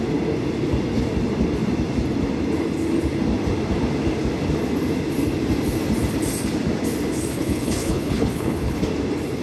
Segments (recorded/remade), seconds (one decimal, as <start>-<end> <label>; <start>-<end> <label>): 0.0-7.3 recorded; 7.3-8.8 remade; 8.8-9.4 recorded